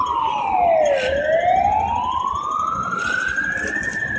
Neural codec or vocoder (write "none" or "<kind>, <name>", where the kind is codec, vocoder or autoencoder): none